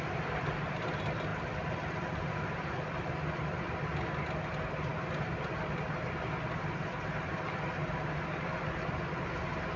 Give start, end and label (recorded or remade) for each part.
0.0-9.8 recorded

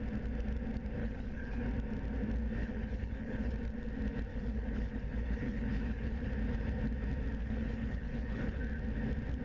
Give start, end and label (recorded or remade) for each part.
0.0-1.0 recorded; 1.0-1.6 remade; 1.6-2.6 recorded; 2.6-3.5 remade; 3.5-4.3 recorded; 4.3-6.3 remade; 6.3-7.4 recorded; 7.4-8.6 remade; 8.6-9.4 recorded